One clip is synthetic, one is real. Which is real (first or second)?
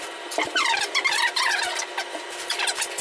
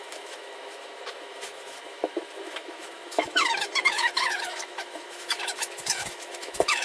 first